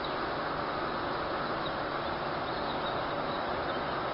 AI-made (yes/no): no